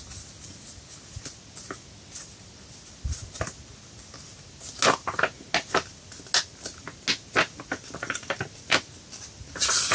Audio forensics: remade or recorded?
recorded